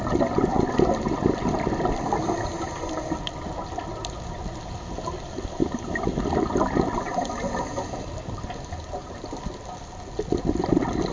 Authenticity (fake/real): real